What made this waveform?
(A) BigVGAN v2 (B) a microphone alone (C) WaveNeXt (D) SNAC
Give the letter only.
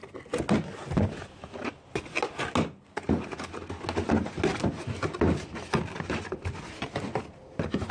B